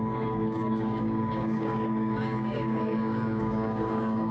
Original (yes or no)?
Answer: no